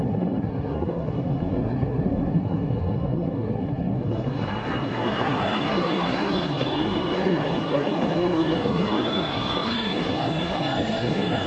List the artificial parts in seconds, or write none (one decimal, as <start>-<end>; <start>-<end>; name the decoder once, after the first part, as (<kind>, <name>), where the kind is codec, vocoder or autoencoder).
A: 0.0-11.5 (codec, SNAC)